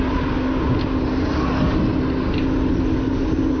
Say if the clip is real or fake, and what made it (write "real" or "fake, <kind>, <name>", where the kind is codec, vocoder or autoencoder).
real